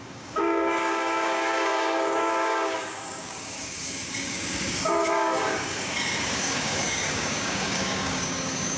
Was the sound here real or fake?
fake